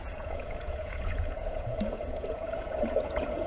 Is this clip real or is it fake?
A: fake